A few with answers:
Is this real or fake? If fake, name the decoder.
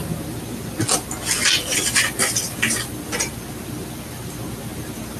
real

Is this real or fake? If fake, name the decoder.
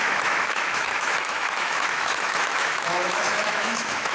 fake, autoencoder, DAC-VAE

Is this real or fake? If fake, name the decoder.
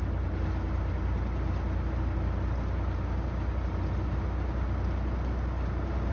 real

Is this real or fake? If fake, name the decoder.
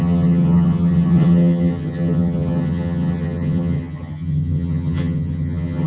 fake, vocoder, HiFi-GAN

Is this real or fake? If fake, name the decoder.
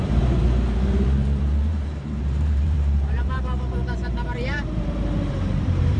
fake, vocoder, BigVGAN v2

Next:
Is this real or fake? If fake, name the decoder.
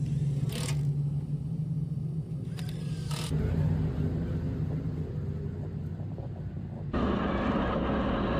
real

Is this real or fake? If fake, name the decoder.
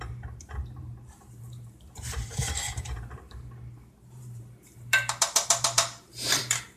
fake, vocoder, BigVGAN v2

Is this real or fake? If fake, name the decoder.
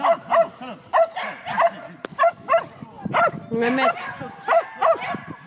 real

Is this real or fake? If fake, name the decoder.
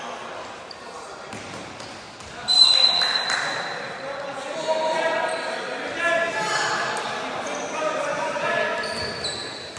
real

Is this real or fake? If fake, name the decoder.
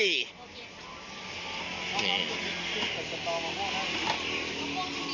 real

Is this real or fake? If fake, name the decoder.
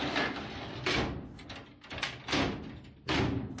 real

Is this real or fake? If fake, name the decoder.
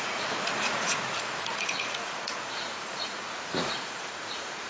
fake, vocoder, Vocos